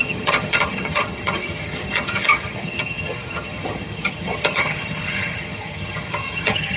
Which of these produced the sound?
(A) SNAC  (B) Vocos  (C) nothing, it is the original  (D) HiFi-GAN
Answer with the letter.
D